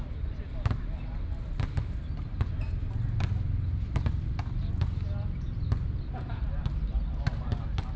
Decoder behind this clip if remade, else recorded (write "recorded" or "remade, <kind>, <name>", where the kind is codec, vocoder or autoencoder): recorded